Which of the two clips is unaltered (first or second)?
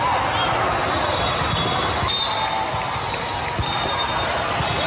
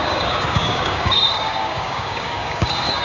first